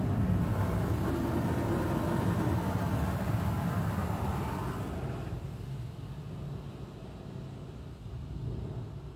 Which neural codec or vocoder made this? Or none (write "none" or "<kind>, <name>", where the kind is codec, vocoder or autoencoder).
none